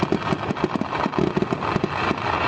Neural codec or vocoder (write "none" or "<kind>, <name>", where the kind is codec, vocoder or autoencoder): none